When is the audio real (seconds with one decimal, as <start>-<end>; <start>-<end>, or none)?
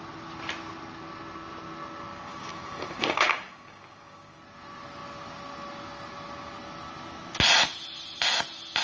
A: 0.0-2.1; 4.4-8.8